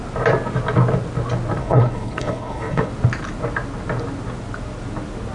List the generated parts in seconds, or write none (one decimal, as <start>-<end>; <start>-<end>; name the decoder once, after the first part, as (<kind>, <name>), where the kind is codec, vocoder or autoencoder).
1.6-2.9 (codec, HILCodec)